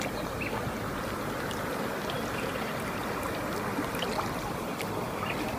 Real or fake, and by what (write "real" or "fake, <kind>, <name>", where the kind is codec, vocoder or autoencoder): real